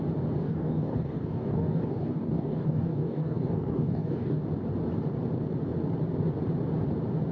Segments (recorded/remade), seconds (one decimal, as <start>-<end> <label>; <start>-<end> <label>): 0.0-0.4 recorded; 0.4-4.4 remade; 4.4-7.3 recorded